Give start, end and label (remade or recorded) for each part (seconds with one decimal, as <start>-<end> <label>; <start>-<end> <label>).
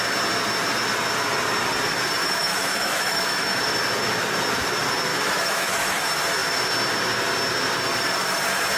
0.0-2.2 recorded; 2.2-3.6 remade; 3.6-5.1 recorded; 5.1-6.0 remade; 6.0-8.8 recorded